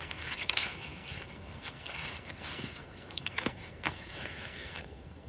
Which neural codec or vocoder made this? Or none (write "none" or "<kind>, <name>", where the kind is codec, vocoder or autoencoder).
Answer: codec, SNAC